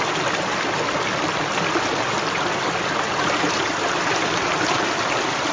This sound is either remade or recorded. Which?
recorded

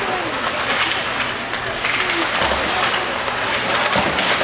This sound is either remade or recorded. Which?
recorded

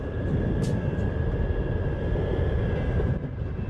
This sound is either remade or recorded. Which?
recorded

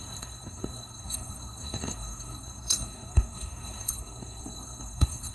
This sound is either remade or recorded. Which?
remade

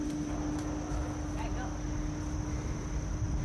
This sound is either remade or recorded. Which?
recorded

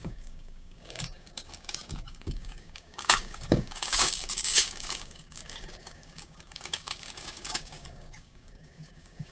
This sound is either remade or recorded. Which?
remade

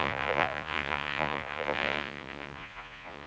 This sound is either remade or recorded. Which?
remade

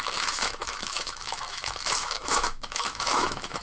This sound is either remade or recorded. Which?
remade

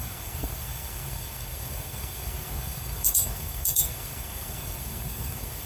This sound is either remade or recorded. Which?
remade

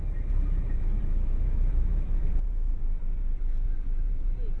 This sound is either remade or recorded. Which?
remade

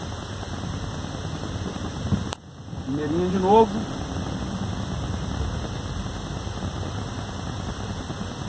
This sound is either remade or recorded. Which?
recorded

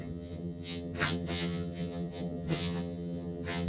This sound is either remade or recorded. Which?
remade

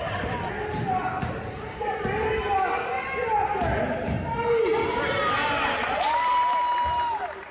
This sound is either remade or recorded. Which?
recorded